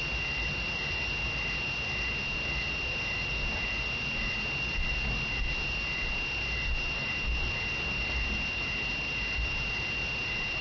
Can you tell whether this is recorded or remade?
recorded